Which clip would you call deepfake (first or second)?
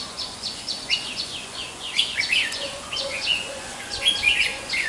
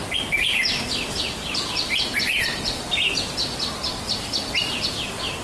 first